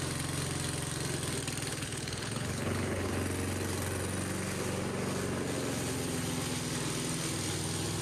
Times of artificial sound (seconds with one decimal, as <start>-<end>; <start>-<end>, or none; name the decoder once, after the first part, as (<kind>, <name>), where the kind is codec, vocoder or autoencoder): 1.7-3.1 (codec, HILCodec)

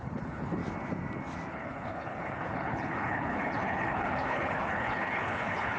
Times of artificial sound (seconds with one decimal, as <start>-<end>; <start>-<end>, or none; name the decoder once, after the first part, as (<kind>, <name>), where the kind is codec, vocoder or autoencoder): 0.0-0.6 (codec, HILCodec); 1.5-5.8